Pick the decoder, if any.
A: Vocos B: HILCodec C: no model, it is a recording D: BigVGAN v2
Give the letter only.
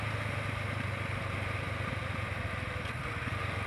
C